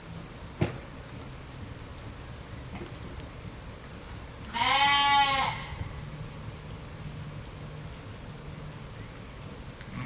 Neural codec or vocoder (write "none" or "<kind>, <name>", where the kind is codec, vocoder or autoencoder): none